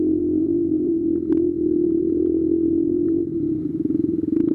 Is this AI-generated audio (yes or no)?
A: yes